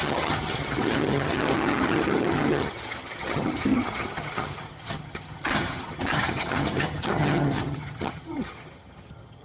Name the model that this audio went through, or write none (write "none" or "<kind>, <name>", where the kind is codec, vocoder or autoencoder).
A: vocoder, HiFi-GAN